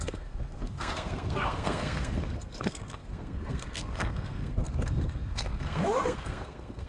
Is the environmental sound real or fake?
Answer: fake